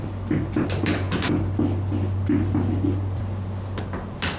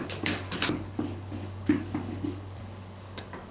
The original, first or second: first